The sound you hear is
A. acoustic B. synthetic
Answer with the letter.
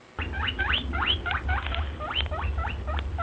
A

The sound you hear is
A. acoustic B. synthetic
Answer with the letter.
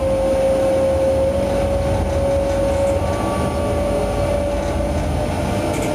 A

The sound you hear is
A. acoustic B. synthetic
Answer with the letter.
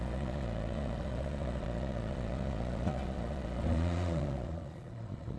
B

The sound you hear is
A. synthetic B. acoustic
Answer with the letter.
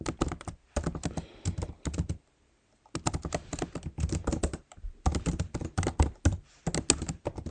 B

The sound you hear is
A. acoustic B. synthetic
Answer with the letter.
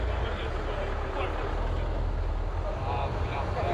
A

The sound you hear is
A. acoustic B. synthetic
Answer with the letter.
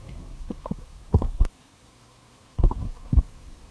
B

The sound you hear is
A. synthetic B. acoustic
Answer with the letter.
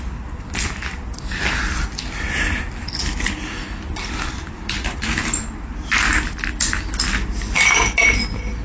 B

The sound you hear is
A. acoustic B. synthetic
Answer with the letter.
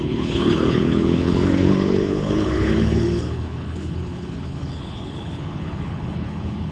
B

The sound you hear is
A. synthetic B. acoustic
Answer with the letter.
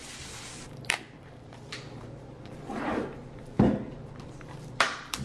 A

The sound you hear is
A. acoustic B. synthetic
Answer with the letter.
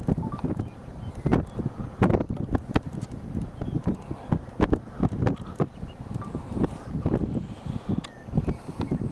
A